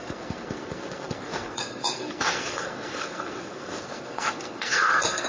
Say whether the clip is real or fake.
fake